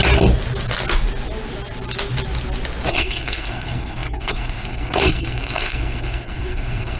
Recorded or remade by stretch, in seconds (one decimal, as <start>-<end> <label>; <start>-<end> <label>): 0.0-2.9 recorded; 2.9-7.0 remade